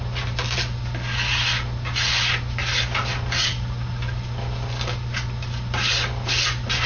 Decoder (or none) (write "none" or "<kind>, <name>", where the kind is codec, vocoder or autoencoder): none